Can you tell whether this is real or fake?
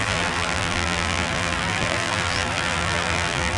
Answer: fake